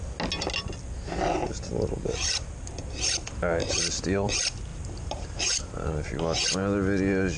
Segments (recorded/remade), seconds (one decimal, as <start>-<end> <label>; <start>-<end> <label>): 0.0-3.6 recorded; 3.6-4.3 remade; 4.3-4.7 recorded; 4.7-5.4 remade; 5.4-7.4 recorded